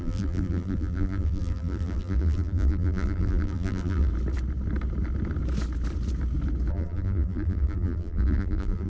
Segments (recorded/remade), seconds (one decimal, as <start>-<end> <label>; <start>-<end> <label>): 0.0-4.1 remade; 4.1-6.7 recorded; 6.7-8.9 remade